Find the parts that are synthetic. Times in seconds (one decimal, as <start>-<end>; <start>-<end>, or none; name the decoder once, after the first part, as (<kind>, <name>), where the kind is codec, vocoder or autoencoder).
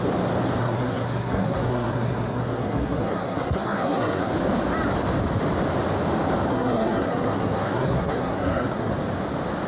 0.6-4.3 (codec, SNAC); 6.5-8.9